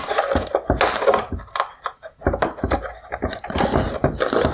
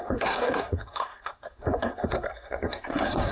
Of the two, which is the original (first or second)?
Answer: first